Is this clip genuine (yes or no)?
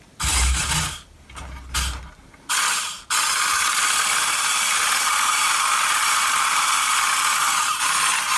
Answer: yes